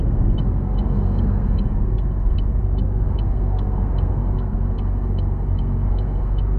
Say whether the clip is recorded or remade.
remade